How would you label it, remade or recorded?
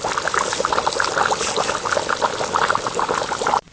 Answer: recorded